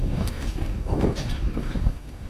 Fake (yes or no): yes